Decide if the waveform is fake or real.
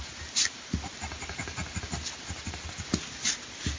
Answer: real